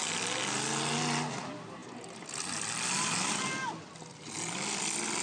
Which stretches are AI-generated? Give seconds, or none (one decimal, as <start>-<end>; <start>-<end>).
none